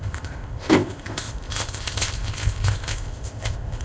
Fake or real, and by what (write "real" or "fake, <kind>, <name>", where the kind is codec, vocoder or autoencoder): fake, codec, ZipCodec